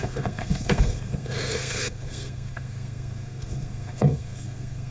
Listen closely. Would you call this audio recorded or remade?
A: remade